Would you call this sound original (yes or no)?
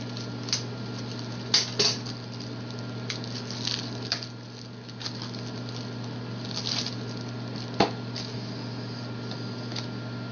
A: yes